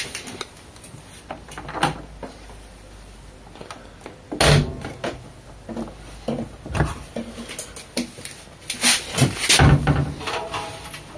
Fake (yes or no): no